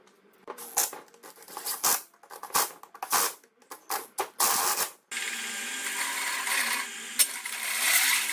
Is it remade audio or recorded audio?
recorded